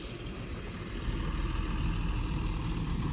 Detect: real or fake real